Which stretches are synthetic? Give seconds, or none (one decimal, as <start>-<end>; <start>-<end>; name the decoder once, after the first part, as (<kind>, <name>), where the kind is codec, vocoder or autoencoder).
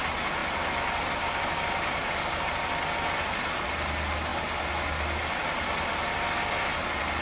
none